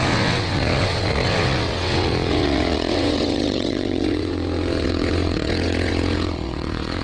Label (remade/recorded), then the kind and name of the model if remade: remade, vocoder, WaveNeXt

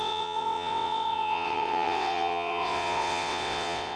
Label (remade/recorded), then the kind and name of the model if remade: remade, vocoder, WaveNeXt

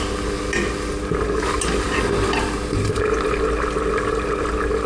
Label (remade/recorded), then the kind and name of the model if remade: recorded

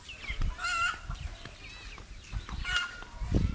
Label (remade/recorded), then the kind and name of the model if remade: recorded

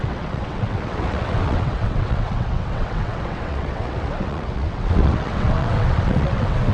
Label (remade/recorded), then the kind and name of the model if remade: remade, vocoder, WaveNeXt